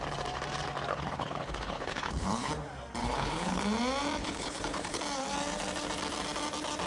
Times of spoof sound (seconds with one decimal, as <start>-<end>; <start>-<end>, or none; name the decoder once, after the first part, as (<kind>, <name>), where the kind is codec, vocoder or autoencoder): 0.9-2.5 (codec, HILCodec); 3.0-3.6; 4.2-5.0